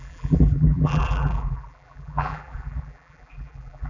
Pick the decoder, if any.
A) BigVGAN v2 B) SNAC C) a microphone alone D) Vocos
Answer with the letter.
A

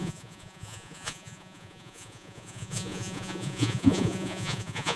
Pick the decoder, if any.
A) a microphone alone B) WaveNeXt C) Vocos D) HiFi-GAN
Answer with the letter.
C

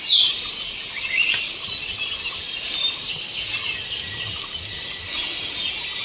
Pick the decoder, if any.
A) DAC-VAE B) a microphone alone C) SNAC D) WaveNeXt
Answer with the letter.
B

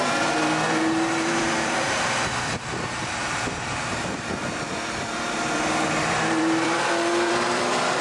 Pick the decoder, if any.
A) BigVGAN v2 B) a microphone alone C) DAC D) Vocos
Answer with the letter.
A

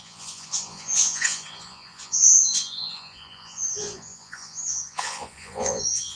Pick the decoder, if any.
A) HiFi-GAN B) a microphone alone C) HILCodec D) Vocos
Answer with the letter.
D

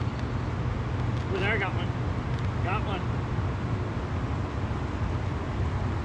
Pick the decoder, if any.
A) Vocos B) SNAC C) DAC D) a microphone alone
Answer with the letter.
D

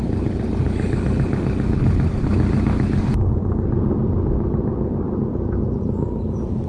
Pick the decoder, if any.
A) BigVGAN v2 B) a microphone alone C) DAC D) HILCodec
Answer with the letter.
B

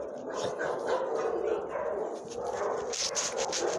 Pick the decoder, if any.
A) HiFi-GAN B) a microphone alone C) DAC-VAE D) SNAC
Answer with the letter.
B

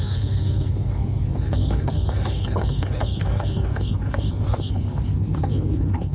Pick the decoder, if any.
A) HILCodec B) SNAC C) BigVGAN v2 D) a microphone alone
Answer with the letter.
B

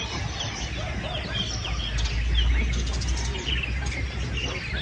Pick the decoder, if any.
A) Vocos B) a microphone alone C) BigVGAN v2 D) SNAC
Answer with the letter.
B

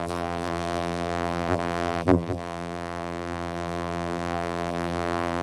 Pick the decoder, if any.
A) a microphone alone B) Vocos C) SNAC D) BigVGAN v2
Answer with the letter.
D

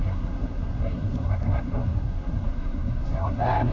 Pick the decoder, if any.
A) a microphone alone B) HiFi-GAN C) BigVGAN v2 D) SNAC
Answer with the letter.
D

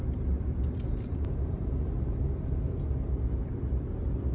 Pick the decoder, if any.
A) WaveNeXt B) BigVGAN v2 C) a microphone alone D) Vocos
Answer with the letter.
B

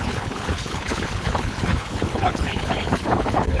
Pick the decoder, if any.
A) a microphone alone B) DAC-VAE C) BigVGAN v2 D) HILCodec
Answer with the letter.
D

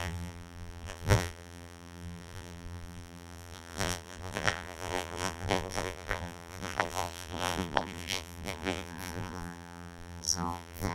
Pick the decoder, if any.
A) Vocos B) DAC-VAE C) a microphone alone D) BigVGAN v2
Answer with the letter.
D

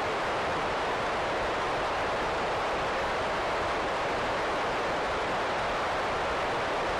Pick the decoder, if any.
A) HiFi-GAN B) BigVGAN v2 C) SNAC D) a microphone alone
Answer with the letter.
B